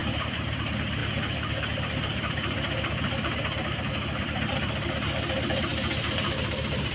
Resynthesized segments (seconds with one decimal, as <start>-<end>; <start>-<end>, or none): 0.0-0.5; 1.0-3.9; 5.7-6.9